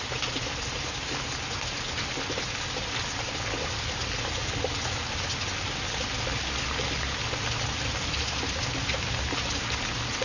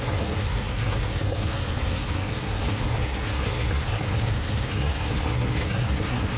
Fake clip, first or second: second